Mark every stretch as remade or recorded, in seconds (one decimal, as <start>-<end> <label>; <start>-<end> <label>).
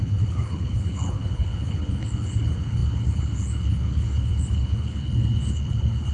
0.0-6.1 remade